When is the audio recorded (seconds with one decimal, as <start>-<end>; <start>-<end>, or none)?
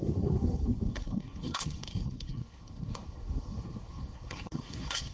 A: none